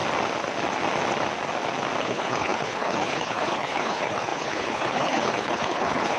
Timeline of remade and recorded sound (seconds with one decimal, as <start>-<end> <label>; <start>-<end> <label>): 0.0-2.0 recorded; 2.0-6.2 remade